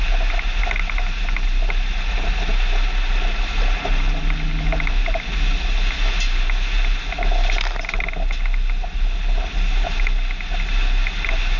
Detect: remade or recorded recorded